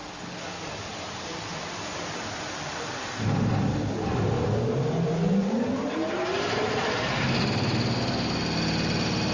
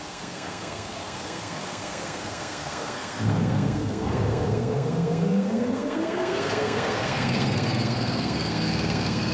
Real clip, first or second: first